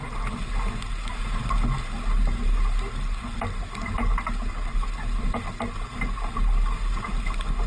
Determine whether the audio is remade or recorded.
recorded